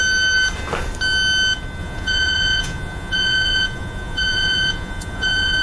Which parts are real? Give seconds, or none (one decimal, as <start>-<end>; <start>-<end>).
0.0-1.8